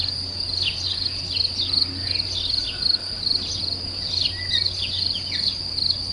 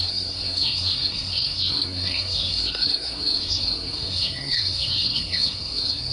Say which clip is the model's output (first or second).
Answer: second